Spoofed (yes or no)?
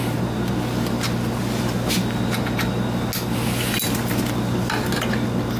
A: no